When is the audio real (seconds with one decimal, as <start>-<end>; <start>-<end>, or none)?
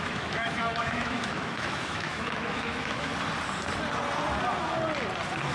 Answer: 3.1-5.5